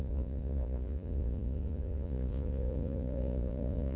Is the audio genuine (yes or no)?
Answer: no